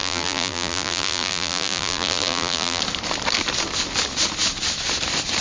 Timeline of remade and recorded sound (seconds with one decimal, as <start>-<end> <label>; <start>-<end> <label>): 0.0-2.8 remade; 2.8-5.4 recorded